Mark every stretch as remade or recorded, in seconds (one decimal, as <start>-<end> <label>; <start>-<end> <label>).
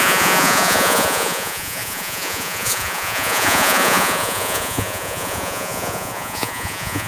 0.0-7.1 remade